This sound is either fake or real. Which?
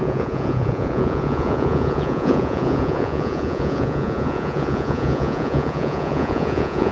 fake